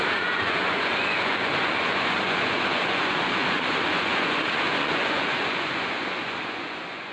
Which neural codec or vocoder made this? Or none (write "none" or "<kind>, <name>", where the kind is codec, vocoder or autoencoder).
vocoder, Vocos